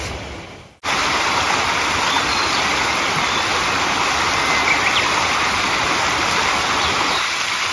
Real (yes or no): yes